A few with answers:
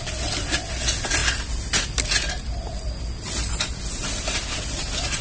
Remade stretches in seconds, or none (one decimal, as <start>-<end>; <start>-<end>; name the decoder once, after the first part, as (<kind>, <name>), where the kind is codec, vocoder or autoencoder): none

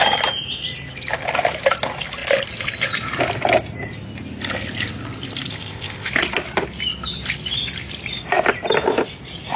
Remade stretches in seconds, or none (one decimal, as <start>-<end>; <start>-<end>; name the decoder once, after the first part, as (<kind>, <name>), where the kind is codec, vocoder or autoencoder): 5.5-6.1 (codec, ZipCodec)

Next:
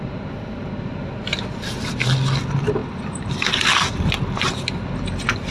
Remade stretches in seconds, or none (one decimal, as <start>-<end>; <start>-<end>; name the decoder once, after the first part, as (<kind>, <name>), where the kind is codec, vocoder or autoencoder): none